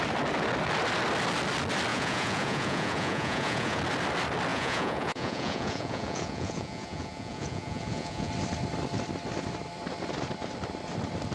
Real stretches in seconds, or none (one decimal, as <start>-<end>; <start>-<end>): 0.0-1.9; 3.8-4.5; 8.3-11.3